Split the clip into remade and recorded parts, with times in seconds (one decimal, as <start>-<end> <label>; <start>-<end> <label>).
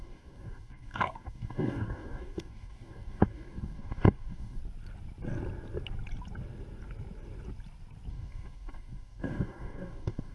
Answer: 0.0-4.6 remade; 4.6-8.1 recorded; 8.1-10.3 remade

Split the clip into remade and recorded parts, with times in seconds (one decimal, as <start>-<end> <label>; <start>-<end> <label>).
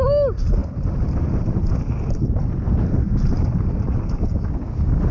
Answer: 0.0-5.1 recorded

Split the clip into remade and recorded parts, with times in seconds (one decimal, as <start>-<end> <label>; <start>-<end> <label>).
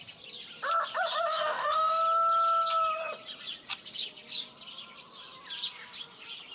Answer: 0.0-1.3 recorded; 1.3-2.0 remade; 2.0-6.5 recorded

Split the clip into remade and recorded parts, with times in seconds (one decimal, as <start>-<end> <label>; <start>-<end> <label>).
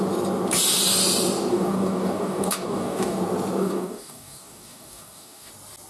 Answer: 0.0-1.5 recorded; 1.5-3.2 remade; 3.2-3.6 recorded; 3.6-5.5 remade; 5.5-5.9 recorded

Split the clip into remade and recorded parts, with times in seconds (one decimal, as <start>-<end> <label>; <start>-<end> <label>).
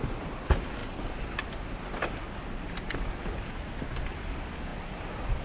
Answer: 0.0-5.4 recorded